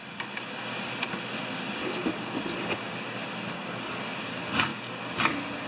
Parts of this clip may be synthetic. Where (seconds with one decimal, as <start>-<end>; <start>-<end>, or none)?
3.5-4.0